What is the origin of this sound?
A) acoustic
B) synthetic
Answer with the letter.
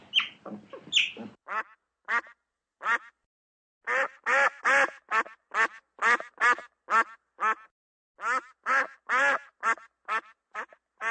A